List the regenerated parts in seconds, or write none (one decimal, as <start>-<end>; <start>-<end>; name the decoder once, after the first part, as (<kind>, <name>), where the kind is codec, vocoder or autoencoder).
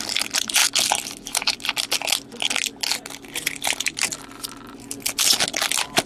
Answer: none